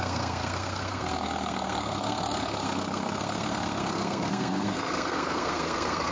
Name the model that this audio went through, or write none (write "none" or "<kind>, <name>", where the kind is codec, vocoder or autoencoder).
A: codec, SNAC